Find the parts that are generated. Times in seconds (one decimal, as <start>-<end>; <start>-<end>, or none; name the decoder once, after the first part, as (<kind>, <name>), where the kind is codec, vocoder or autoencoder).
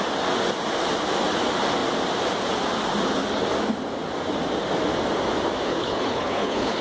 5.7-6.8 (codec, HILCodec)